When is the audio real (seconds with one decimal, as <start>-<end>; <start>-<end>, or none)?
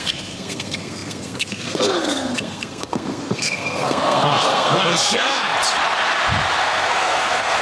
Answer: 5.5-6.6